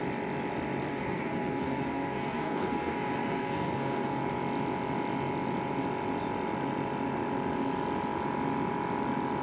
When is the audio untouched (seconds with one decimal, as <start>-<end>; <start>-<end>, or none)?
0.0-0.9; 4.2-9.4